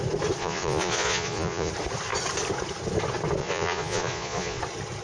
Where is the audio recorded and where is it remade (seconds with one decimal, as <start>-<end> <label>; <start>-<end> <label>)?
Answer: 0.0-0.4 recorded; 0.4-1.7 remade; 1.7-3.4 recorded; 3.4-4.6 remade; 4.6-5.0 recorded